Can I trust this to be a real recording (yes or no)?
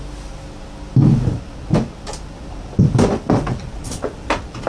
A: yes